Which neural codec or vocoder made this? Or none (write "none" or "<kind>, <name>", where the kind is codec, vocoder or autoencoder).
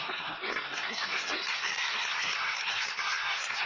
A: codec, SNAC